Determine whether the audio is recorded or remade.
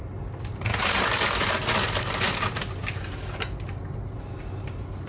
recorded